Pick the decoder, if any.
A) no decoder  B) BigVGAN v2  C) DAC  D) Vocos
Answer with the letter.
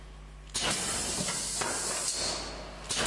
A